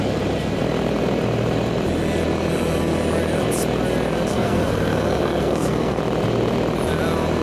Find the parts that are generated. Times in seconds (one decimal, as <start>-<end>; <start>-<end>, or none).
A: 4.3-6.0